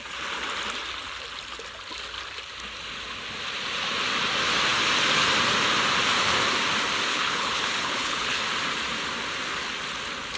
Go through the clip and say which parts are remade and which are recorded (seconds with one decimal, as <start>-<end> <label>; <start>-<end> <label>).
0.0-7.1 recorded; 7.1-8.4 remade; 8.4-10.4 recorded